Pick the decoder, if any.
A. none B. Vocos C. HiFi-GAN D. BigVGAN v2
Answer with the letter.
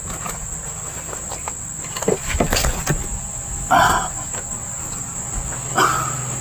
A